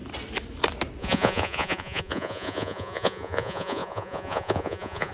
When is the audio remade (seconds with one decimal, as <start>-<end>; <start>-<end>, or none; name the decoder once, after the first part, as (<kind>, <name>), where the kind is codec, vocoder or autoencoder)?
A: 1.0-5.1 (vocoder, Vocos)

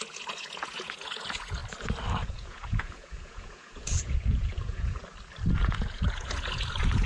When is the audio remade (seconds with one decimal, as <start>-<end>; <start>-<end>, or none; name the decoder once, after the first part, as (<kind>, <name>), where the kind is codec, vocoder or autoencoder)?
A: 0.0-1.6 (vocoder, Vocos); 2.2-5.0; 5.6-7.1